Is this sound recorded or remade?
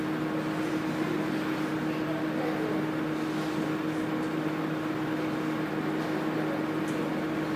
recorded